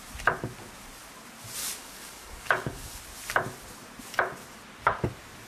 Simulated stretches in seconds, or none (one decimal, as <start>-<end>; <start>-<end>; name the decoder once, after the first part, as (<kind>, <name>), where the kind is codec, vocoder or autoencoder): 1.6-3.0 (codec, DAC)